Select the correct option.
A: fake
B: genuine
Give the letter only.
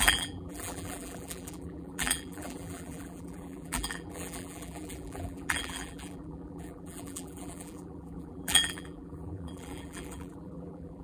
A